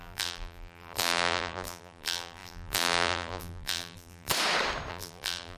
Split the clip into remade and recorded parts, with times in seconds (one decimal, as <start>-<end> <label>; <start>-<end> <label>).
0.0-4.3 remade; 4.3-4.9 recorded; 4.9-5.6 remade